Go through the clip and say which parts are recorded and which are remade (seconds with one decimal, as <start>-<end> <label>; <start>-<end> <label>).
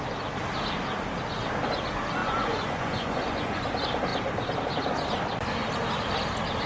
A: 0.0-2.2 recorded; 2.2-3.6 remade; 3.6-6.7 recorded